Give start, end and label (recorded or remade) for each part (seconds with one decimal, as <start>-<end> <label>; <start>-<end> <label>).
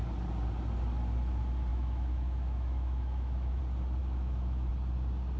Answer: 0.0-1.7 recorded; 1.7-3.6 remade; 3.6-4.0 recorded; 4.0-4.7 remade; 4.7-5.4 recorded